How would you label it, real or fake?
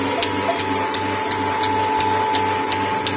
real